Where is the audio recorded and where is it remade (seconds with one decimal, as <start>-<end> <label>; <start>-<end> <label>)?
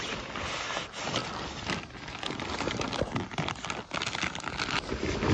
0.0-5.3 recorded